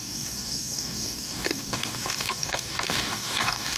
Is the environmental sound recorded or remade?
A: remade